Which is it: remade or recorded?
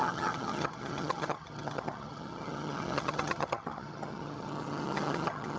remade